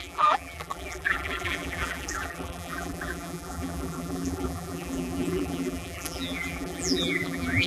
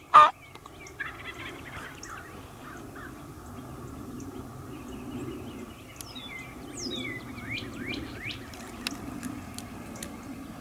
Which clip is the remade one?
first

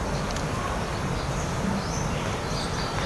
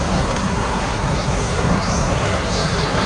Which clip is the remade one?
second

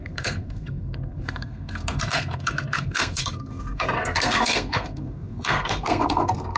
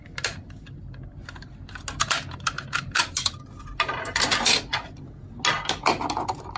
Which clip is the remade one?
first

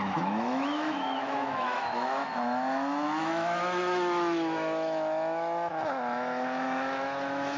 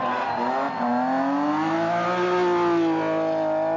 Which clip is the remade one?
first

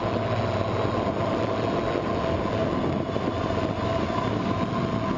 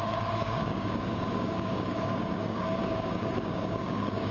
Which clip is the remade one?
second